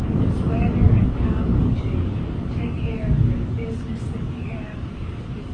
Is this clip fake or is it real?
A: fake